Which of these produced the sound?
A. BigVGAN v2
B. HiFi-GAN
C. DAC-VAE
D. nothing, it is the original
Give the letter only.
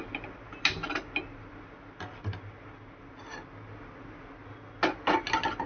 D